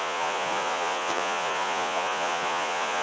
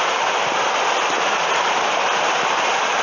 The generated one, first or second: first